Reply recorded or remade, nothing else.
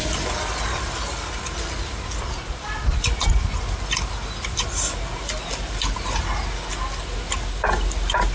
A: recorded